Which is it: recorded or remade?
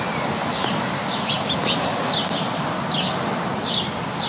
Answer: recorded